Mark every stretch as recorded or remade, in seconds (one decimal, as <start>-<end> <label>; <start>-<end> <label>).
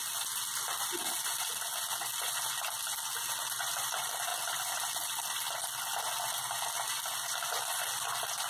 0.0-8.5 recorded